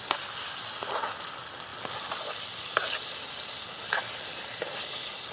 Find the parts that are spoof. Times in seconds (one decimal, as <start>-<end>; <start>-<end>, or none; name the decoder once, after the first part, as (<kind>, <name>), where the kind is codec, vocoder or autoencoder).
0.0-1.7 (vocoder, BigVGAN v2)